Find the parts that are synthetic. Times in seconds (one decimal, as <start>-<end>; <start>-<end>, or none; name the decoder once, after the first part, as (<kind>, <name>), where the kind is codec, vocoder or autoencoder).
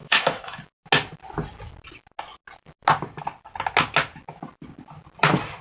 0.0-0.6 (autoencoder, DAC-VAE)